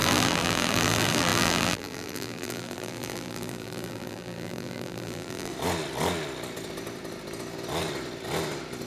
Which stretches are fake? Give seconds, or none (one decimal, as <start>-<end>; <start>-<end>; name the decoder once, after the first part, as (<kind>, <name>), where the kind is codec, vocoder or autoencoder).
0.0-5.5 (vocoder, BigVGAN v2)